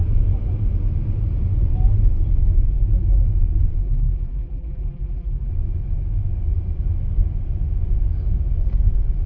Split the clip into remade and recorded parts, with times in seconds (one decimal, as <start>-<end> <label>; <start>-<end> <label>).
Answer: 0.0-3.8 recorded; 3.8-5.5 remade; 5.5-9.3 recorded